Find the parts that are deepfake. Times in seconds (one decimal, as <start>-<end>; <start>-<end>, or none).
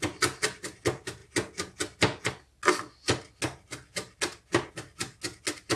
none